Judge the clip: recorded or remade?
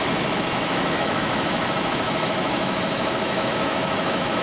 remade